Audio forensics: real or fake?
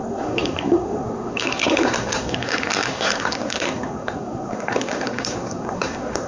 fake